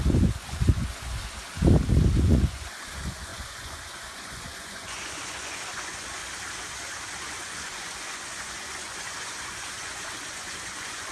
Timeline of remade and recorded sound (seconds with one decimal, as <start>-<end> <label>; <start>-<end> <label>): 0.0-1.2 remade; 1.2-2.1 recorded; 2.1-6.2 remade; 6.2-6.7 recorded; 6.7-11.1 remade